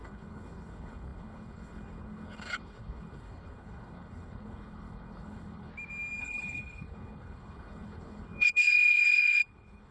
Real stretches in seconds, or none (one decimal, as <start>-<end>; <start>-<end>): 5.7-6.2